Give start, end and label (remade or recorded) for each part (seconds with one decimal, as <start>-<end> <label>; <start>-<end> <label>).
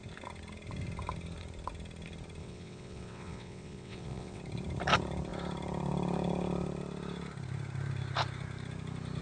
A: 0.0-2.4 recorded; 2.4-4.4 remade; 4.4-9.2 recorded